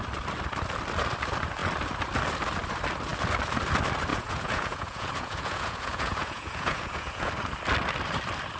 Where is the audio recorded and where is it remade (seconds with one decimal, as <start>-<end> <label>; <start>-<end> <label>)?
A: 0.0-4.1 recorded; 4.1-7.3 remade; 7.3-8.6 recorded